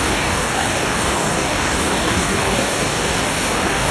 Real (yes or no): no